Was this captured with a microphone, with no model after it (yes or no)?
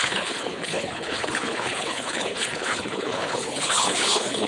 no